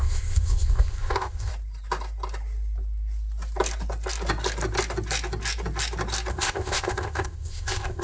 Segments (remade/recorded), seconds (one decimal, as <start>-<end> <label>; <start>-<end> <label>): 0.0-1.5 remade; 1.5-6.3 recorded; 6.3-8.0 remade